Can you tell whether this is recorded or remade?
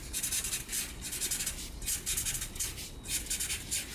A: recorded